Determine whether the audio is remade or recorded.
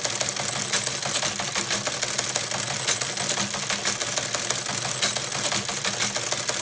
recorded